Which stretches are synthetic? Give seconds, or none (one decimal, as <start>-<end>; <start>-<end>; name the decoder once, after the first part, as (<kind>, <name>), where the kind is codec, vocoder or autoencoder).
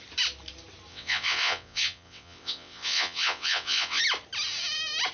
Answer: 0.9-4.0 (vocoder, WaveNeXt)